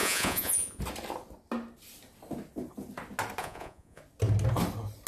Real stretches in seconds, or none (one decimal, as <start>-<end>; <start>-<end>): 0.8-3.4; 4.0-5.1